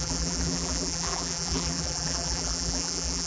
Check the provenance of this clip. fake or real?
fake